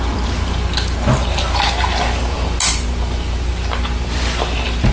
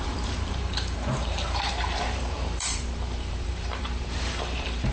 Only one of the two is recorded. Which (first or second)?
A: first